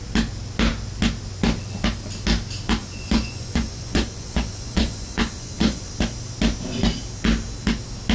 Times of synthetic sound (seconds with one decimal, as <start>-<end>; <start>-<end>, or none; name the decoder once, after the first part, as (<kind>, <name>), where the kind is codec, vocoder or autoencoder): 2.8-5.9 (vocoder, Vocos)